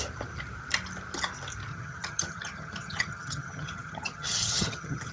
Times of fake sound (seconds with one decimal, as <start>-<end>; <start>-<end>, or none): 1.7-5.1